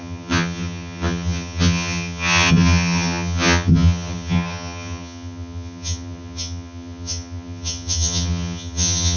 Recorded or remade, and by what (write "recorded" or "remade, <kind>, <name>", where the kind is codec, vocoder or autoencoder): remade, vocoder, HiFi-GAN